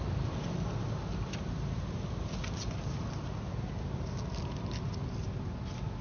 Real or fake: real